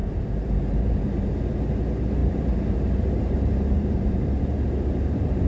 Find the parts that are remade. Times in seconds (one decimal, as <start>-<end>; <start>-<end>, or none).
0.0-1.3; 2.2-5.5